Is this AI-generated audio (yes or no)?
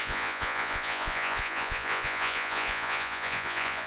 yes